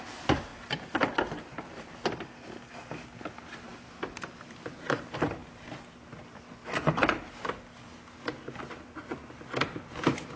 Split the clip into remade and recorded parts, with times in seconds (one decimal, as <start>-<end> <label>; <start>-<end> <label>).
0.0-10.4 recorded